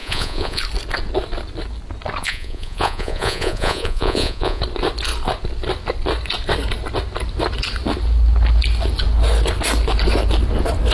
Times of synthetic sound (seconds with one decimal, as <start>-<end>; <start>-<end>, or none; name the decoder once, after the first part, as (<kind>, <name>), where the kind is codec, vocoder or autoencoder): 0.0-0.6 (vocoder, Vocos); 2.2-4.6